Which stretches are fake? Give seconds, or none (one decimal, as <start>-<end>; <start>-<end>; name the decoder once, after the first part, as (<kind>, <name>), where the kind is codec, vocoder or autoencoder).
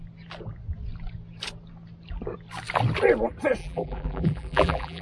3.6-5.0 (vocoder, BigVGAN v2)